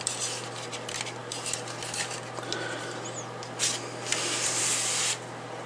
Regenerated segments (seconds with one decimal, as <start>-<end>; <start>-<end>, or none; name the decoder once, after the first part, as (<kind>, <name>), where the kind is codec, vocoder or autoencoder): none